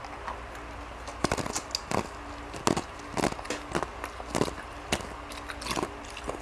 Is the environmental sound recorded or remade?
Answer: recorded